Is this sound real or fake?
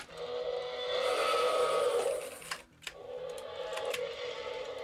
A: real